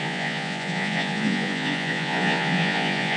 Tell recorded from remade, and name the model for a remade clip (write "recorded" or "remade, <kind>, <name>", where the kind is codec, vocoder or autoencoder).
remade, vocoder, Vocos